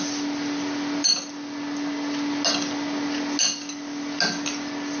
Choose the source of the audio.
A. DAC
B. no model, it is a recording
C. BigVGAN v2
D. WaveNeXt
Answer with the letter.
B